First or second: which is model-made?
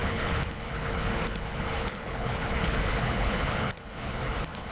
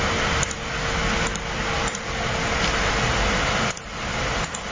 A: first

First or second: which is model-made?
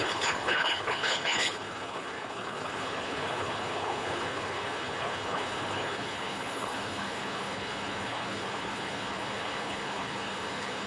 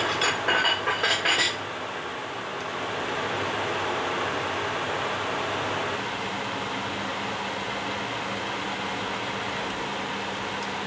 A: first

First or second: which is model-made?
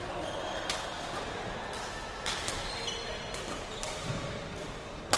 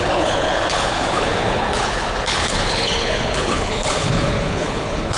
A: second